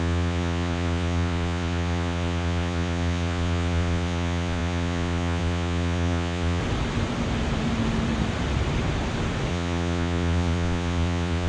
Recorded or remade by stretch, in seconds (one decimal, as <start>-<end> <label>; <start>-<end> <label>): 0.0-6.6 remade; 6.6-9.5 recorded; 9.5-11.5 remade